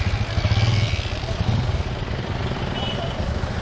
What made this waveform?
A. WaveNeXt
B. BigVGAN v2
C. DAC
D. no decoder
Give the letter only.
D